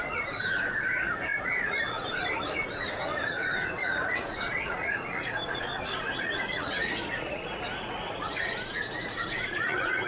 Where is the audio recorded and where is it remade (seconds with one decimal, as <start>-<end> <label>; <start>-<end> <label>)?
0.0-10.1 remade